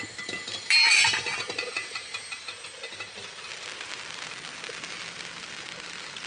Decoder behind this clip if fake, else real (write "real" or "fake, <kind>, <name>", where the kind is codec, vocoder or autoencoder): real